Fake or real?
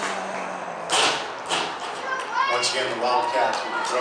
real